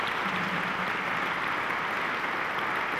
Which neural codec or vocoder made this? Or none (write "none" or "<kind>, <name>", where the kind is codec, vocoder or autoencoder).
none